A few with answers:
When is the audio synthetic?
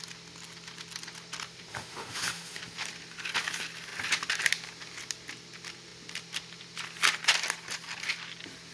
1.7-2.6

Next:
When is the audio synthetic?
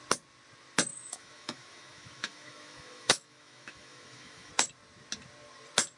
0.9-4.5